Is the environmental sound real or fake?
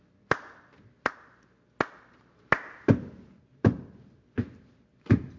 real